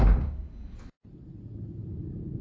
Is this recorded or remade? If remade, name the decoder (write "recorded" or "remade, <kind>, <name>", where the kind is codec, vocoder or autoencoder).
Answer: recorded